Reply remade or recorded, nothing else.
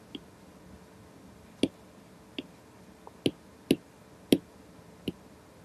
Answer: recorded